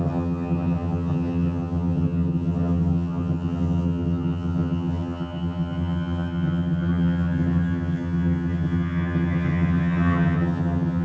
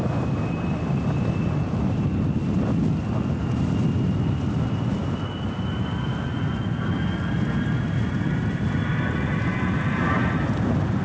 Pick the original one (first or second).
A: second